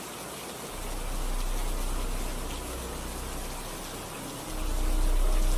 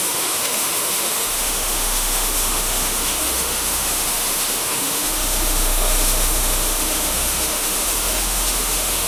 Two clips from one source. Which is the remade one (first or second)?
second